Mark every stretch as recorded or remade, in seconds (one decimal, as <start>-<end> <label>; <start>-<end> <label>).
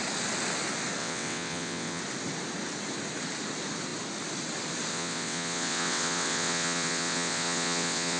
0.0-1.0 recorded; 1.0-2.0 remade; 2.0-4.9 recorded; 4.9-8.2 remade